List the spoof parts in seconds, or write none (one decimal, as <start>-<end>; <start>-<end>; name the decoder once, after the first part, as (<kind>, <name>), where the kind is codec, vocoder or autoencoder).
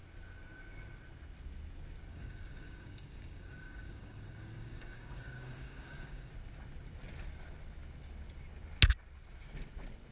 2.1-6.3 (codec, DAC)